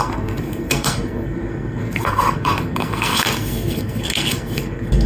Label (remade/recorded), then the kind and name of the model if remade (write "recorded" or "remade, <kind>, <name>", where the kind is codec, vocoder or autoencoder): remade, codec, SNAC